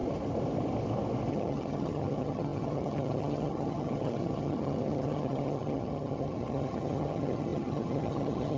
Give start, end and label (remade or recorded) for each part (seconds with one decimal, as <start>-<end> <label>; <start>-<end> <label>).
0.0-1.3 recorded; 1.3-8.6 remade